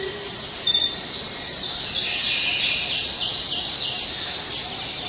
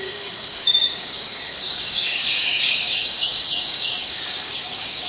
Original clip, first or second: first